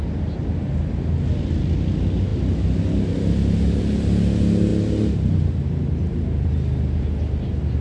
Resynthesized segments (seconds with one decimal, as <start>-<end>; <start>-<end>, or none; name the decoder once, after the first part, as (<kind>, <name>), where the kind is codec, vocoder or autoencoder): none

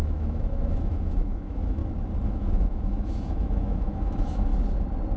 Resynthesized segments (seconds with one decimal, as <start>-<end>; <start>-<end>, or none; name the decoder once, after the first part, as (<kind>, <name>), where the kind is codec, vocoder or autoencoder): 0.0-1.8 (autoencoder, DAC-VAE); 2.3-4.5

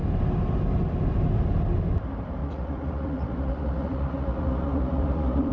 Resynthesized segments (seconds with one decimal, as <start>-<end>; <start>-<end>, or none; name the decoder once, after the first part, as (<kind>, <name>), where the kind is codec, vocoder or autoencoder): 2.4-5.5 (vocoder, Vocos)

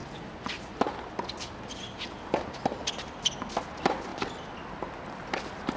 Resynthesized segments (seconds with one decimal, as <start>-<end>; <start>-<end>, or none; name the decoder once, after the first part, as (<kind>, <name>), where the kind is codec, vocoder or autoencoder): none

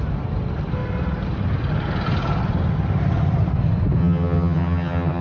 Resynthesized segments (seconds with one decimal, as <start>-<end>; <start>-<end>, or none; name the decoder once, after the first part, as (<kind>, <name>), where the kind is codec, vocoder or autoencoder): 4.0-5.2 (vocoder, HiFi-GAN)

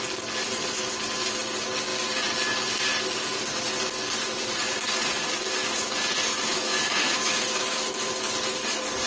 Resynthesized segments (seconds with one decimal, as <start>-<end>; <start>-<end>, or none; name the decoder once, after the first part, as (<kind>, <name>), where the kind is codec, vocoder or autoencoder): 6.3-8.1 (autoencoder, DAC-VAE)

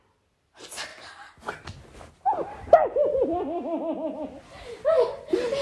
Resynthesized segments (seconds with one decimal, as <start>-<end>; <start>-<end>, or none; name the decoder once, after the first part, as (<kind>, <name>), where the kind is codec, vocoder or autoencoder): none